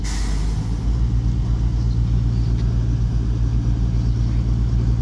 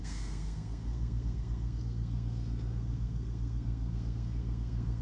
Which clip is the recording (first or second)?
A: first